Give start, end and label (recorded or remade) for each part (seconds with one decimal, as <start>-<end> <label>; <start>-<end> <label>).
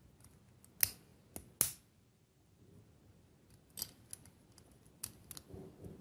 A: 0.0-6.0 recorded